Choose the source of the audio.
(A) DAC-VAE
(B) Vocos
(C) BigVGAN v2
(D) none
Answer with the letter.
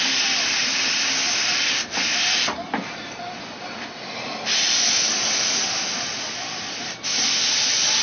D